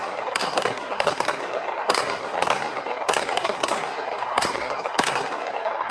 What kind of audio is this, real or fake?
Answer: fake